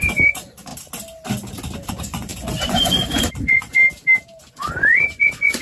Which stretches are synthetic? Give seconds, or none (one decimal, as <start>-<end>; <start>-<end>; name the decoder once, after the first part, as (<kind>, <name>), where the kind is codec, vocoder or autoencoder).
0.0-0.7 (vocoder, Vocos); 1.9-3.8; 4.5-5.6